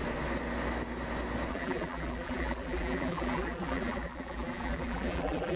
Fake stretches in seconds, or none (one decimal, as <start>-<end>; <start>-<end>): 1.5-5.6